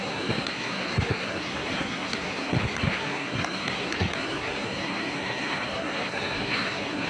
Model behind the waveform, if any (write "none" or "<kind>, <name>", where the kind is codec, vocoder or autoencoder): codec, SNAC